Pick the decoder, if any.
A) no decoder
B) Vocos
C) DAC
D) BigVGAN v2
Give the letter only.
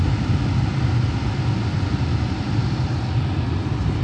A